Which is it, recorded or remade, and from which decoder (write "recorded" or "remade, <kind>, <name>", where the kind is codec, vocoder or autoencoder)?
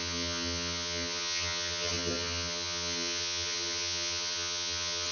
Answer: remade, vocoder, HiFi-GAN